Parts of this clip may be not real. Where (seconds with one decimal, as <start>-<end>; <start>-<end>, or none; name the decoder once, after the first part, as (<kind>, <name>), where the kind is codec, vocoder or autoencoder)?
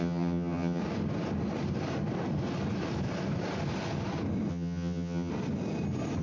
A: 0.0-0.8 (vocoder, HiFi-GAN); 4.5-5.3